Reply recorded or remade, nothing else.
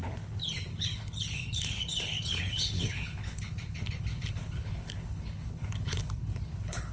remade